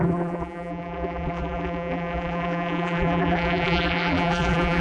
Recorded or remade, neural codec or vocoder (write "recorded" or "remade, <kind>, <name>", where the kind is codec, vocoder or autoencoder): remade, vocoder, BigVGAN v2